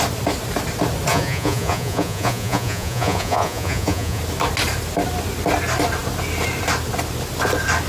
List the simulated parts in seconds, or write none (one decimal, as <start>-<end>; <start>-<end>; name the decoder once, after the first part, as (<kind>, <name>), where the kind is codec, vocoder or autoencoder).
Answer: 1.1-4.2 (vocoder, Vocos)